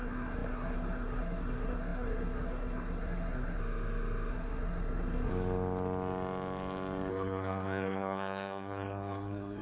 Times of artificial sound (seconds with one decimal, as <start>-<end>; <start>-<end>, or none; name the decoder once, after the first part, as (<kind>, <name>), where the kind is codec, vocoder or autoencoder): 0.0-3.6 (codec, SNAC); 4.3-5.3; 7.1-9.6